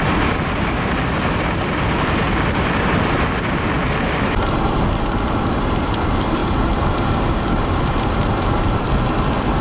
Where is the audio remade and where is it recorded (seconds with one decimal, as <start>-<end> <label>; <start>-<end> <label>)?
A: 0.0-9.6 recorded